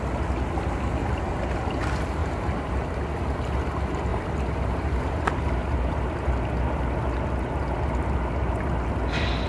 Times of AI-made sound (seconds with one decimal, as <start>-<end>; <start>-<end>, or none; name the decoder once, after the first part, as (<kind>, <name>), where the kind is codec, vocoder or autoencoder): 1.0-1.7 (vocoder, BigVGAN v2); 2.2-3.0; 4.1-6.3